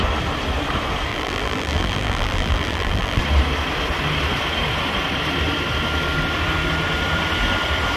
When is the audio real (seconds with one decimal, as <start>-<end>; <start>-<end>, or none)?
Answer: 0.0-1.1; 3.2-8.0